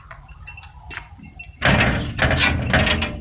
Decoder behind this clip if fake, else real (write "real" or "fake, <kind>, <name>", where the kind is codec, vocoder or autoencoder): real